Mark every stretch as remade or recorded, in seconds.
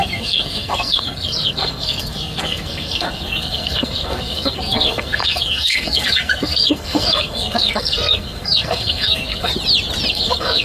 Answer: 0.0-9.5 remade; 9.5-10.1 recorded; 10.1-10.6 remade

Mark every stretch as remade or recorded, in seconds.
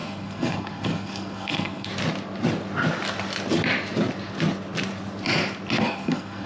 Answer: 0.0-1.9 remade; 1.9-5.8 recorded; 5.8-6.5 remade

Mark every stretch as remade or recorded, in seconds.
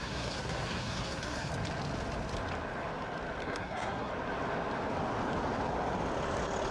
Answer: 0.0-1.5 remade; 1.5-3.4 recorded; 3.4-4.1 remade; 4.1-6.7 recorded